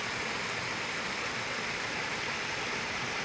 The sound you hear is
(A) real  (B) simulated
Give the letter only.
A